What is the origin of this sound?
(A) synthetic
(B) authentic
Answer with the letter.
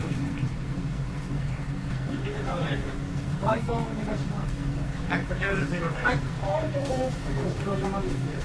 A